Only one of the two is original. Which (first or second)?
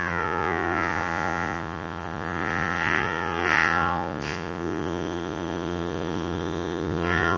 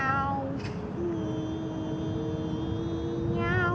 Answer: second